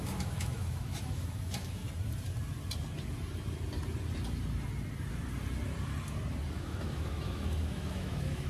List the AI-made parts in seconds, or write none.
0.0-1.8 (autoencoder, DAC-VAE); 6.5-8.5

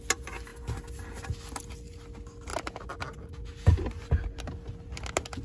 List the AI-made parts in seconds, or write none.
none

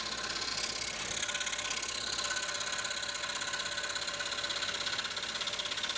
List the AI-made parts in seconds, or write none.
none

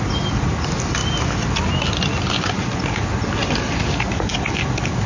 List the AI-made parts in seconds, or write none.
none